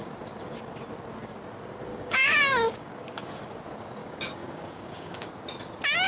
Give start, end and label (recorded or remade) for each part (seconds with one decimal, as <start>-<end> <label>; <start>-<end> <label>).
0.0-1.9 recorded; 1.9-2.9 remade; 2.9-4.0 recorded; 4.0-5.3 remade; 5.3-6.1 recorded